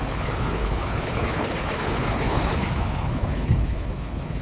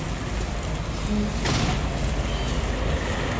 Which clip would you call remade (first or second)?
first